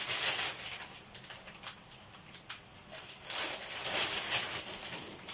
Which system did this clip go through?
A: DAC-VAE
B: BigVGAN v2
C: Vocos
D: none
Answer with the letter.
D